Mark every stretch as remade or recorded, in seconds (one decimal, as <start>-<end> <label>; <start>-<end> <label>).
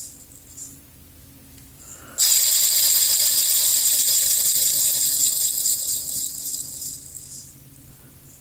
0.0-8.4 recorded